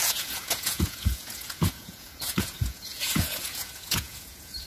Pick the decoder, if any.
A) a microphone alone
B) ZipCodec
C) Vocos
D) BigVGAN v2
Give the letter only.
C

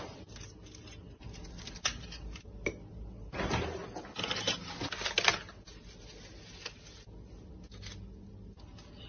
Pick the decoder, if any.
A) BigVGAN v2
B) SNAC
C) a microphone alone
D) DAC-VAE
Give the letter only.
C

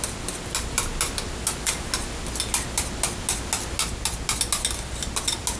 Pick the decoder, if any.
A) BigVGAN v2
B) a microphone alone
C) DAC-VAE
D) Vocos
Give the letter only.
B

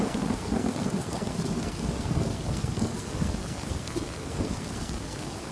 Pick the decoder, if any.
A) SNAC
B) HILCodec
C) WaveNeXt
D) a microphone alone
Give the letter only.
A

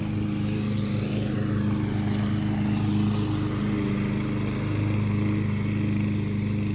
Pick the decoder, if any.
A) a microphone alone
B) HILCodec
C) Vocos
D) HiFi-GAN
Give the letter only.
A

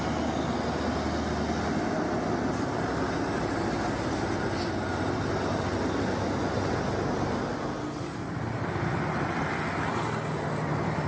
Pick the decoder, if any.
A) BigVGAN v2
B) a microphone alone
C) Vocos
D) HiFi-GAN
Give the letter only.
B